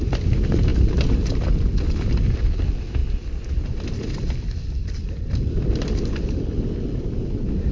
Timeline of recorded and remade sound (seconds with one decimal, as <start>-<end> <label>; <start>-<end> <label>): 0.0-0.7 recorded; 0.7-1.6 remade; 1.6-3.0 recorded; 3.0-3.6 remade; 3.6-7.7 recorded